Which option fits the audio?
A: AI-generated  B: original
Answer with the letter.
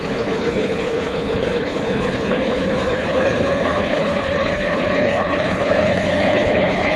A